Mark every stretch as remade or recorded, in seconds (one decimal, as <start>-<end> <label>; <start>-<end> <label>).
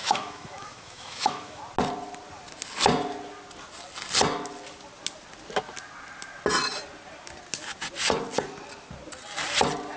0.0-1.6 remade; 1.6-10.0 recorded